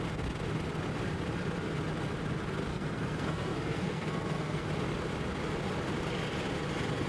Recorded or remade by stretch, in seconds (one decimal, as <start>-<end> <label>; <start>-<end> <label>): 0.0-2.7 recorded; 2.7-4.7 remade; 4.7-7.1 recorded